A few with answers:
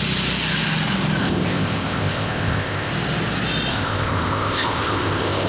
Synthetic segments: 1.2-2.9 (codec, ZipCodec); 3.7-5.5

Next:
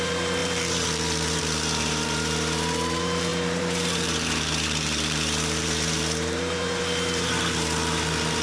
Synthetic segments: 0.0-8.4 (vocoder, BigVGAN v2)

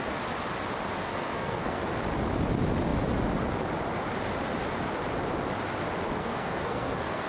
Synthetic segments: 1.0-1.8 (codec, SNAC); 6.2-7.3

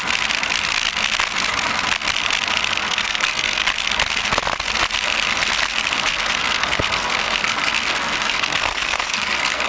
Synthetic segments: 2.8-3.7 (codec, SNAC); 6.1-9.7

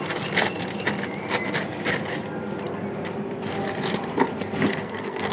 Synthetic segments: 4.7-5.3 (codec, SNAC)